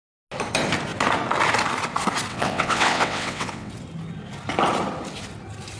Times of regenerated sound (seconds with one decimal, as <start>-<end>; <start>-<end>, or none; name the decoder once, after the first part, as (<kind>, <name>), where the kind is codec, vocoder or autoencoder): 2.3-3.7 (vocoder, WaveNeXt)